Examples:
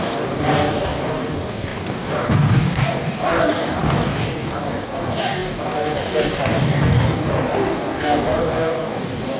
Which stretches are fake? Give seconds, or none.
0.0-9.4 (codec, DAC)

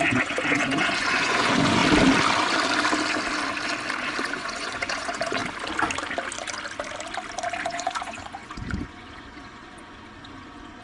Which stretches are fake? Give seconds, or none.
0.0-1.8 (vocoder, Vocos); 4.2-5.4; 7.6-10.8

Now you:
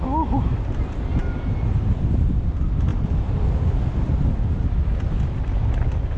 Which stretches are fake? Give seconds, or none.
none

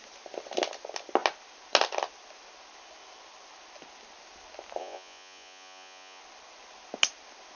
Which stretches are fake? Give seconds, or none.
4.8-6.2 (vocoder, Vocos)